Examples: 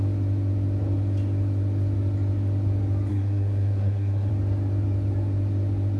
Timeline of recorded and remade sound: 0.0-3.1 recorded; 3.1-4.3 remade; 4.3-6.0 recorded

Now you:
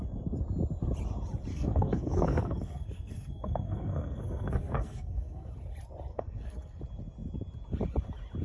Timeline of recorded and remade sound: 0.0-1.5 recorded; 1.5-5.5 remade; 5.5-6.1 recorded; 6.1-6.8 remade; 6.8-8.4 recorded

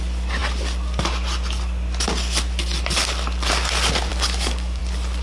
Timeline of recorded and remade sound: 0.0-4.1 recorded; 4.1-4.8 remade; 4.8-5.2 recorded

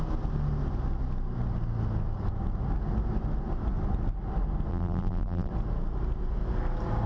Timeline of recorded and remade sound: 0.0-4.7 recorded; 4.7-5.5 remade; 5.5-7.1 recorded

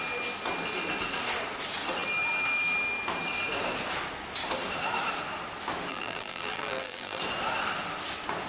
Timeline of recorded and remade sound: 0.0-5.9 recorded; 5.9-7.2 remade; 7.2-8.5 recorded

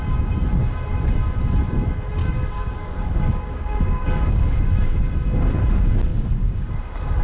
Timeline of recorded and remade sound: 0.0-2.2 recorded; 2.2-5.0 remade; 5.0-6.1 recorded; 6.1-6.7 remade; 6.7-7.2 recorded

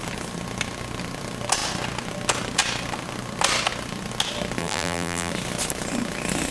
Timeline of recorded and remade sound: 0.0-4.6 recorded; 4.6-5.3 remade; 5.3-6.5 recorded